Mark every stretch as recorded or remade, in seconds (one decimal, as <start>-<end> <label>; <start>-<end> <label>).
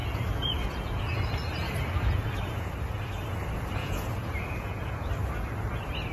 0.0-1.0 remade; 1.0-1.6 recorded; 1.6-2.7 remade; 2.7-3.8 recorded; 3.8-5.1 remade; 5.1-6.1 recorded